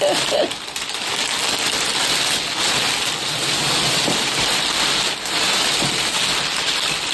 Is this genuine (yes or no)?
yes